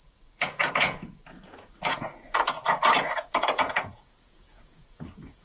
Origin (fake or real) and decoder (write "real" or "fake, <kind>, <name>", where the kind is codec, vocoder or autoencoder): fake, vocoder, Vocos